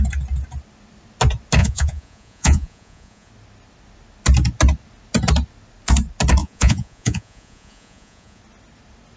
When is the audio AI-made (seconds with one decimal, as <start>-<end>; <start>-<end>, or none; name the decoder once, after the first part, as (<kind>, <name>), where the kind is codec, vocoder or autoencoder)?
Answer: 1.6-3.3 (vocoder, Vocos); 6.4-8.4